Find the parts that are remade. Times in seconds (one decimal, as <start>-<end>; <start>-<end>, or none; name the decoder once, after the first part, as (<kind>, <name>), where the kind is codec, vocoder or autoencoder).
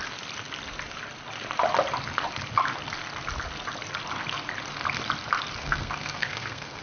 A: 5.6-6.8 (codec, SNAC)